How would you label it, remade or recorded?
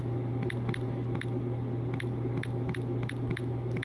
recorded